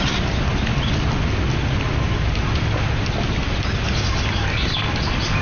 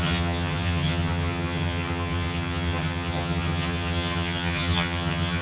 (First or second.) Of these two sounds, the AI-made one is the second